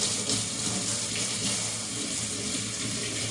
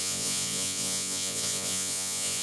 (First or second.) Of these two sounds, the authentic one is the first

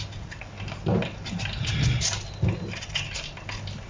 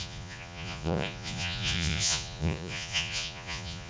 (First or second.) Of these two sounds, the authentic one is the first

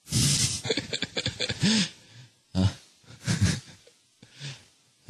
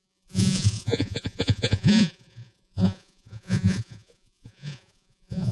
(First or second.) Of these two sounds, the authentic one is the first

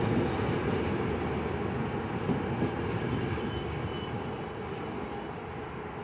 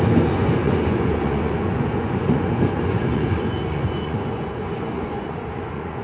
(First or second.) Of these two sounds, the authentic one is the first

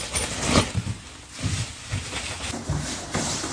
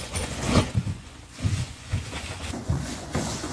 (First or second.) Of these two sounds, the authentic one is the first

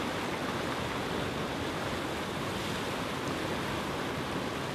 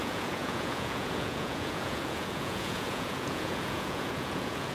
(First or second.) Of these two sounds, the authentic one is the first